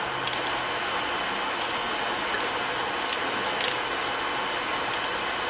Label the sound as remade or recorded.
recorded